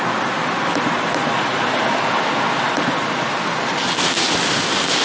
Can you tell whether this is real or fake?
real